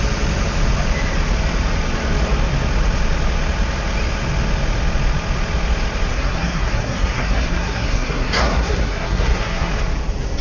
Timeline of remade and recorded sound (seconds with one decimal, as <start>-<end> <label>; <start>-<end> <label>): 0.0-6.1 recorded; 6.1-9.7 remade; 9.7-10.4 recorded